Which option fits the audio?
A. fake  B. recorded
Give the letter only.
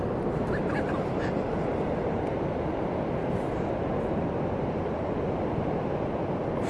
A